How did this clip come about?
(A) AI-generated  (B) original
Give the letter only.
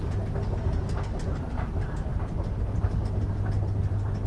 B